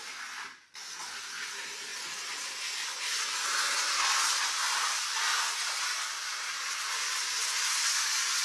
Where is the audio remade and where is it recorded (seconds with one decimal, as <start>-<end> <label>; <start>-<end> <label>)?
0.0-8.4 recorded